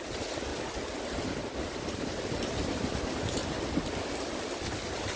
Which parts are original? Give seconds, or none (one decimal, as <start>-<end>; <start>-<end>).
0.0-5.2